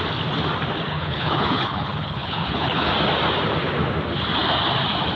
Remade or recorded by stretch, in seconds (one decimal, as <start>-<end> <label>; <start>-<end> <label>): 0.0-0.9 recorded; 0.9-2.9 remade; 2.9-5.2 recorded